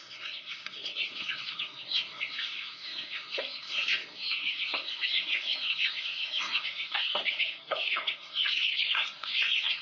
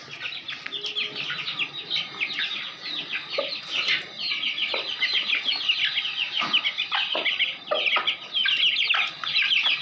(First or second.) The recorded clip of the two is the second